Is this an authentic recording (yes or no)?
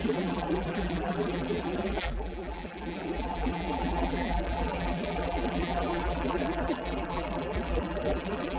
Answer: no